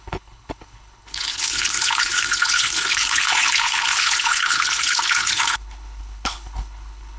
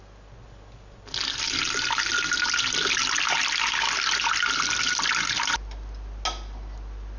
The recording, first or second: second